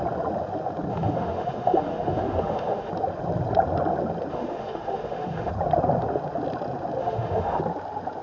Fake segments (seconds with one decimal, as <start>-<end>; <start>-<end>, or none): 0.9-2.9; 4.3-5.5; 7.0-7.6